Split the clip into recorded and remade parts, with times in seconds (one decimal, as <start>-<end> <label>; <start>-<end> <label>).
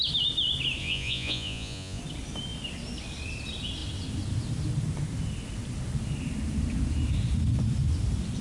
0.0-0.8 recorded; 0.8-2.0 remade; 2.0-8.4 recorded